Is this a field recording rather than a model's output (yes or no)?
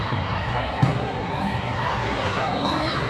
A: no